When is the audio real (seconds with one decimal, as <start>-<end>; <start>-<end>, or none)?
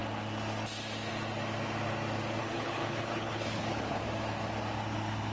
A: 0.0-2.4; 4.0-5.3